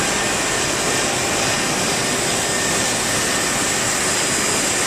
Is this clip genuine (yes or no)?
yes